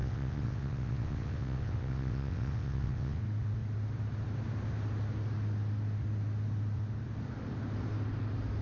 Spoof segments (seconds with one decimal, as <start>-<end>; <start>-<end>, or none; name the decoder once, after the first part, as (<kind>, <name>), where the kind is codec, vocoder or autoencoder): 0.0-3.2 (vocoder, WaveNeXt)